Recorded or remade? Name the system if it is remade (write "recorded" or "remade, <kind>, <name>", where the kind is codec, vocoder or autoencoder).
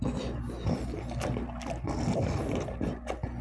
recorded